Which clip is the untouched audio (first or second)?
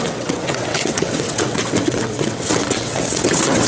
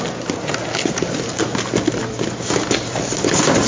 second